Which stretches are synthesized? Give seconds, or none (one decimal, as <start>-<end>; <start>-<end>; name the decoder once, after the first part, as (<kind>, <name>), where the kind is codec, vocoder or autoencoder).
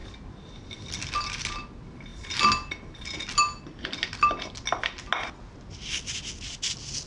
none